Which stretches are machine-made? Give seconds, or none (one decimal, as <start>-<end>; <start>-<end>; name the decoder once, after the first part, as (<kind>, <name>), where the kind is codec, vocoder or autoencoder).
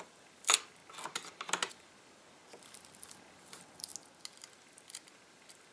0.0-0.8 (vocoder, BigVGAN v2); 1.7-2.4; 3.3-3.9; 4.5-5.7